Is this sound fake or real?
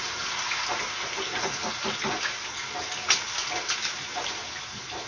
real